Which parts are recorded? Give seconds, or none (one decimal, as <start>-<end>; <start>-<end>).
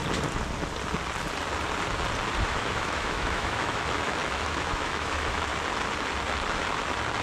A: 0.0-2.4; 5.5-7.2